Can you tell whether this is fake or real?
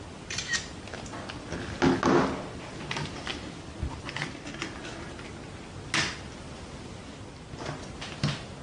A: real